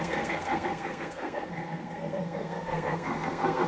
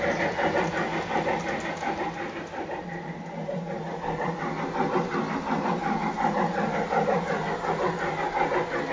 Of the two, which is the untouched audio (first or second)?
second